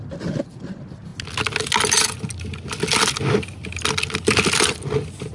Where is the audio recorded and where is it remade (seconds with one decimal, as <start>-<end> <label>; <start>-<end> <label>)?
0.0-5.3 recorded